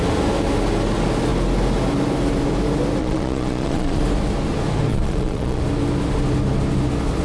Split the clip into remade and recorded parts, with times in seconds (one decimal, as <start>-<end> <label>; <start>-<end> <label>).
0.0-3.0 recorded; 3.0-4.0 remade; 4.0-4.9 recorded; 4.9-5.6 remade; 5.6-7.2 recorded